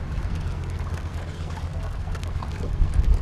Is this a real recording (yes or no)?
no